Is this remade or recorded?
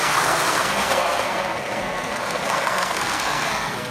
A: remade